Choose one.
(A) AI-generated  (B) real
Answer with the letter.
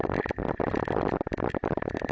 B